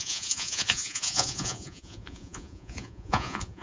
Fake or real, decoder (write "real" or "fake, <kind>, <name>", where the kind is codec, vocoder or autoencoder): fake, vocoder, Vocos